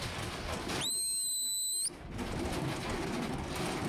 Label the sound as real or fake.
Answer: real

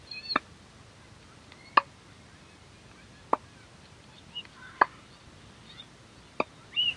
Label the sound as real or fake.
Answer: real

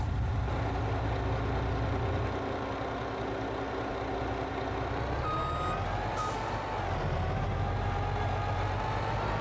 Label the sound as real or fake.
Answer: real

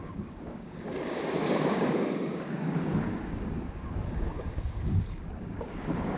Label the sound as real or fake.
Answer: fake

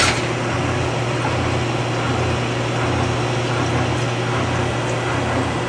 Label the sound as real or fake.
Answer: real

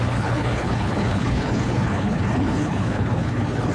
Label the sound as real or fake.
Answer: fake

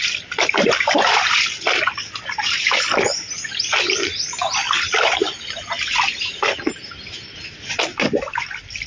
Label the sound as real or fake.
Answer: real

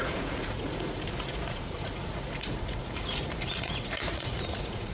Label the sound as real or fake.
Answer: fake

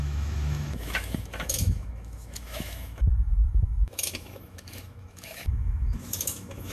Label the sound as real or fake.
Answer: fake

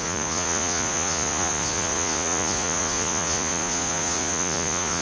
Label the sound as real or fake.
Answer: fake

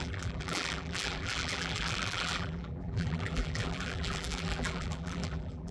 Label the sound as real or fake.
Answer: fake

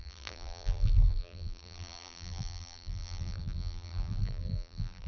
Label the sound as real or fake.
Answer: fake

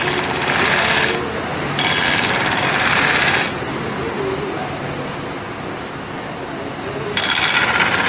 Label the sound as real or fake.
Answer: real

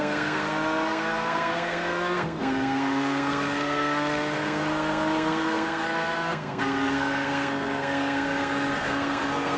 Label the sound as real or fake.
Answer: fake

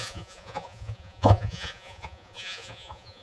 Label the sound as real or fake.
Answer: fake